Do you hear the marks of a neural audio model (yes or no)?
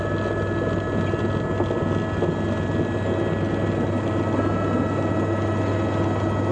no